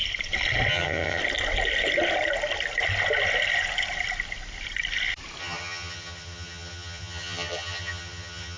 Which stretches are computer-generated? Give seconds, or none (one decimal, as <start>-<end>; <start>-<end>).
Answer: 0.7-1.2; 5.4-8.6